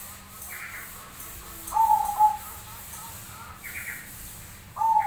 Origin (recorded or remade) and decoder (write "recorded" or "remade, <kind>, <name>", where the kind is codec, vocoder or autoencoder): recorded